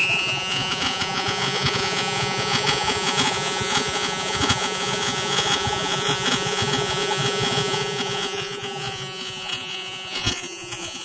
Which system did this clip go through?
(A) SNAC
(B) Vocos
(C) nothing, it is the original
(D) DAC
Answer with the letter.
B